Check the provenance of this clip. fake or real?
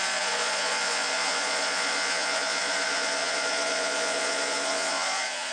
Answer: fake